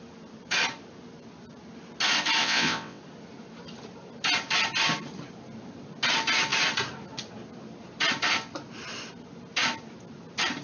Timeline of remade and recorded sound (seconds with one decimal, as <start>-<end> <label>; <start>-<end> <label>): 0.0-2.4 recorded; 2.4-3.0 remade; 3.0-10.6 recorded